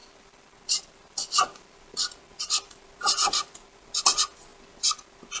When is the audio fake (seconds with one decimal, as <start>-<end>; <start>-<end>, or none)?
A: none